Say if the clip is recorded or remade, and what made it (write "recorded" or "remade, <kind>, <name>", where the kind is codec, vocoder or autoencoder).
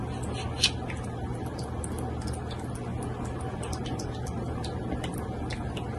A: recorded